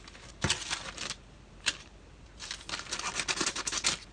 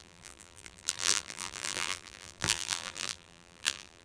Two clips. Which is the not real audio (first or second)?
second